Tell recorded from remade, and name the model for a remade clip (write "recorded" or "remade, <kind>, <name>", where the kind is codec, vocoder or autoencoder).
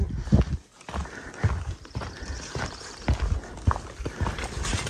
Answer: recorded